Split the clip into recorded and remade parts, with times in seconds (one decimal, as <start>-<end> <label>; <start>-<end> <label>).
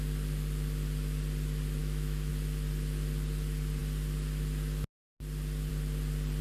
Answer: 0.0-1.8 recorded; 1.8-2.3 remade; 2.3-6.4 recorded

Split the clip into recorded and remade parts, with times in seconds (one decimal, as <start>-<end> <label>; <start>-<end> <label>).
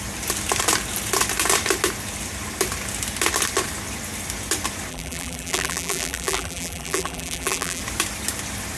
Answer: 0.0-4.9 recorded; 4.9-7.8 remade; 7.8-8.8 recorded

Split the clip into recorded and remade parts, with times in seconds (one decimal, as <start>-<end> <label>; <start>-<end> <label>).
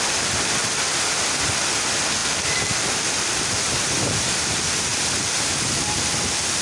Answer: 0.0-2.2 remade; 2.2-3.3 recorded; 3.3-4.9 remade; 4.9-6.1 recorded; 6.1-6.6 remade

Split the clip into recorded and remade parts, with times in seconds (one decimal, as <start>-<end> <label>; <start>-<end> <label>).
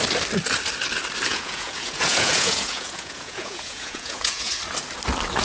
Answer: 0.0-1.3 recorded; 1.3-4.5 remade; 4.5-5.4 recorded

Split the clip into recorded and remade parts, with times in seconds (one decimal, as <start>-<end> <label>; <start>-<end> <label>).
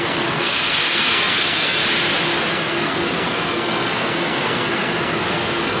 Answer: 0.0-1.8 remade; 1.8-2.5 recorded; 2.5-5.8 remade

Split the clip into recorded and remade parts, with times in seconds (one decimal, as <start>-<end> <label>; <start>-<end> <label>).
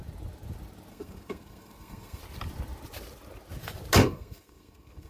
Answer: 0.0-0.9 recorded; 0.9-2.2 remade; 2.2-4.0 recorded; 4.0-5.1 remade